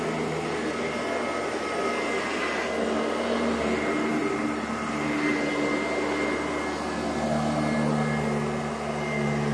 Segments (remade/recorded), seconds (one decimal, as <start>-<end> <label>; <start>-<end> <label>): 0.0-4.2 recorded; 4.2-4.9 remade; 4.9-9.5 recorded